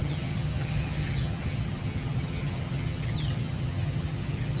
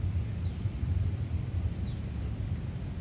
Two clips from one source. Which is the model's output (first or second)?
first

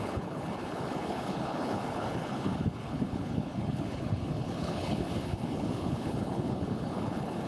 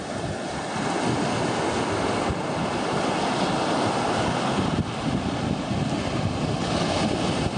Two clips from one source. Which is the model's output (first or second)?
first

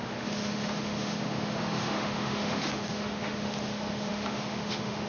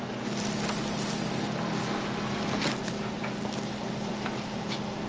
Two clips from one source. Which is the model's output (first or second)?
first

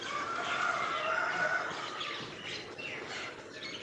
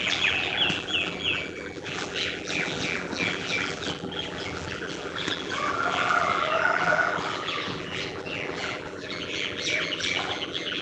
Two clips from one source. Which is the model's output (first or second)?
second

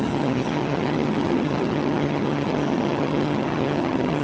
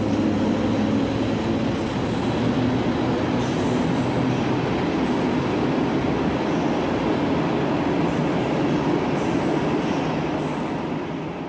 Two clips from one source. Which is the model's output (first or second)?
first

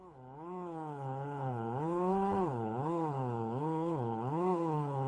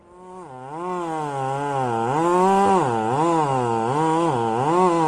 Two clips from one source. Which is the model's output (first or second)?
first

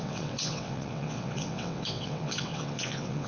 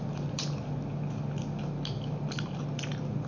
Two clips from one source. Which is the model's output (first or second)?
first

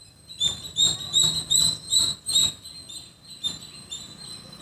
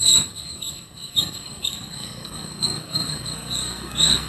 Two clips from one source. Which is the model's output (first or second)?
second